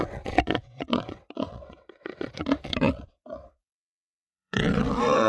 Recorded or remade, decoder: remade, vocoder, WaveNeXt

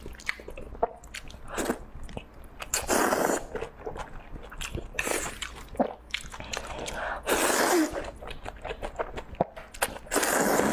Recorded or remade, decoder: recorded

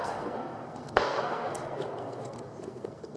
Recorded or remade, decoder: remade, codec, SNAC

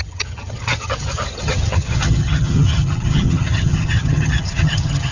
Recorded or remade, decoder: remade, vocoder, HiFi-GAN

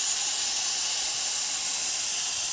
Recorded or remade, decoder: recorded